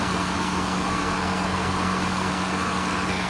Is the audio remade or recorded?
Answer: remade